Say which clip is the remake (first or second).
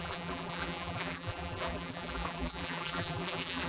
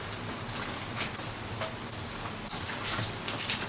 first